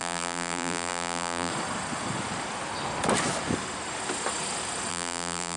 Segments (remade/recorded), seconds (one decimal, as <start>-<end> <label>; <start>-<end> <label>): 0.0-1.5 remade; 1.5-4.9 recorded; 4.9-5.6 remade